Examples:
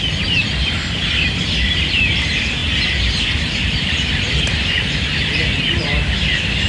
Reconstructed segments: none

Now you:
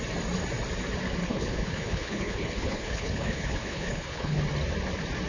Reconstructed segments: 1.2-4.4 (codec, HILCodec)